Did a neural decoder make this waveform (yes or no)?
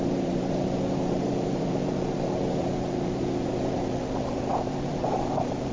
yes